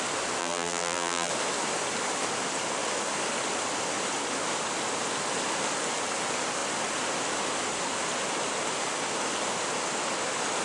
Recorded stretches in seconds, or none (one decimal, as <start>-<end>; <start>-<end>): 0.0-0.4; 1.3-10.6

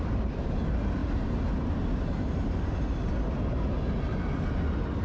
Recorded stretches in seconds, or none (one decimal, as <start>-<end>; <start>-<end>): 1.0-4.0

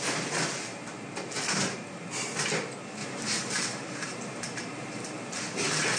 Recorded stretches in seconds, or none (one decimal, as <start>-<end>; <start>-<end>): 0.0-3.0

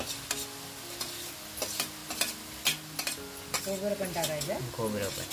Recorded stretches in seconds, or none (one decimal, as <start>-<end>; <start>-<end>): 0.0-5.3

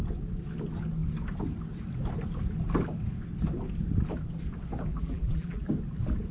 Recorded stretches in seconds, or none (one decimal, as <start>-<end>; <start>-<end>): 0.0-4.9; 5.7-6.3

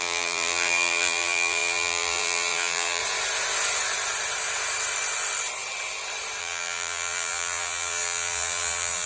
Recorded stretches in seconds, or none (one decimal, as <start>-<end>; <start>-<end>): 3.0-6.4

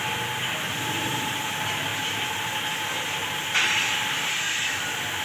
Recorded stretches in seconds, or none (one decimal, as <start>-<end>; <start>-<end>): 0.0-5.2